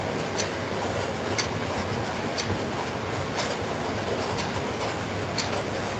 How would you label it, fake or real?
real